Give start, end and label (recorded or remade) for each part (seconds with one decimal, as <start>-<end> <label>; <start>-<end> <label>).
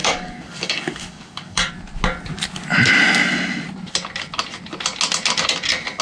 0.0-1.7 remade; 1.7-6.0 recorded